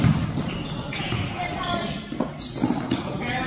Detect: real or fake real